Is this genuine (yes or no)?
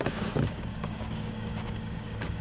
no